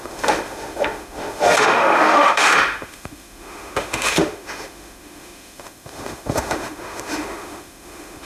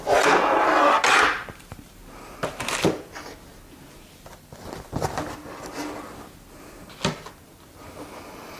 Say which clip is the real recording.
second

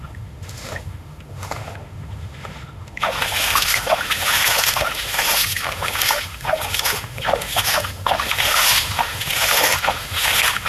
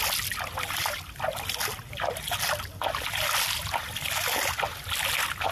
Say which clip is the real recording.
second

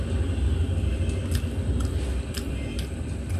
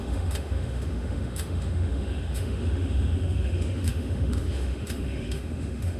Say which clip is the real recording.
first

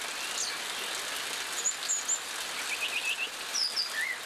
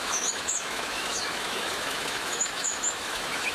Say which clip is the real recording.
first